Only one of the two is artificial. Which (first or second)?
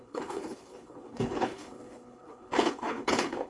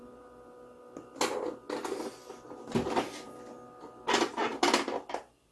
first